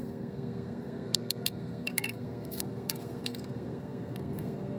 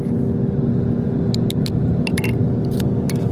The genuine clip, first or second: second